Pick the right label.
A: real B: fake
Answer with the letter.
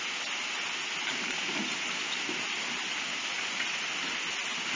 A